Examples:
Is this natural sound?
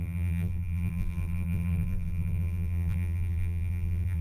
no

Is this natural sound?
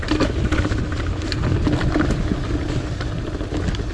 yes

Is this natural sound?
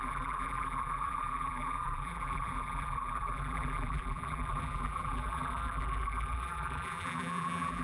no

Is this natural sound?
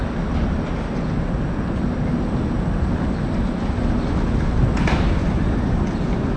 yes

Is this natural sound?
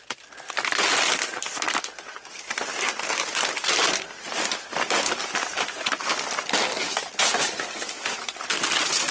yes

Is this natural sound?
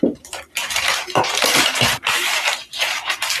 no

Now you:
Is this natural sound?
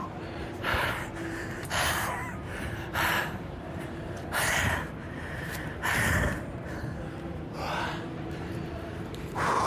no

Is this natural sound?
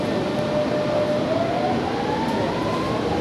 yes